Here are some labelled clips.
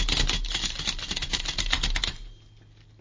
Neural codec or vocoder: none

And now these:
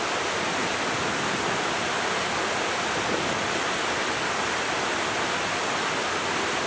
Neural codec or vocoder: none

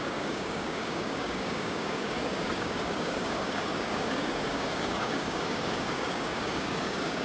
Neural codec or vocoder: codec, DAC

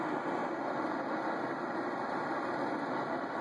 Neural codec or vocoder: none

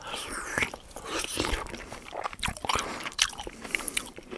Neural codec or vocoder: vocoder, BigVGAN v2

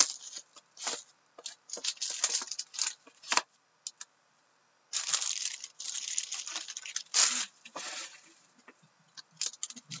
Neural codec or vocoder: none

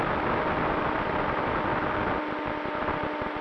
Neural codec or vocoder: none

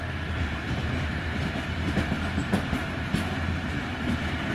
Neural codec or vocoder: none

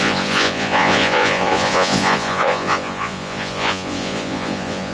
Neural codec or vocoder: vocoder, Vocos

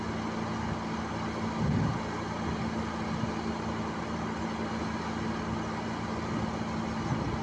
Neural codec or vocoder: none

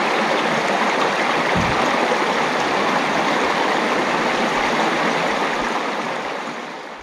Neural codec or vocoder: none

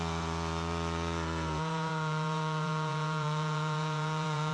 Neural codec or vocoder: vocoder, Vocos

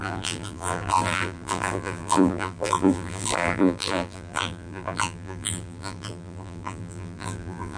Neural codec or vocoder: vocoder, BigVGAN v2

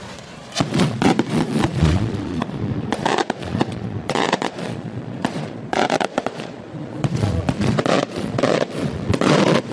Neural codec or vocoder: vocoder, Vocos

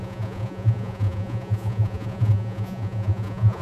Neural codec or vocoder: vocoder, Vocos